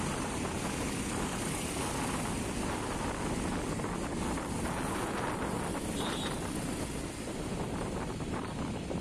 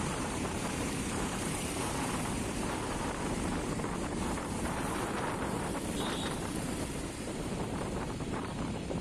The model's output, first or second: second